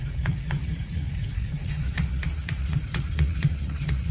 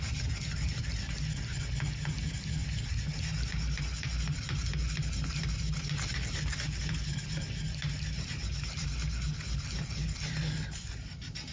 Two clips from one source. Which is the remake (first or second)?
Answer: first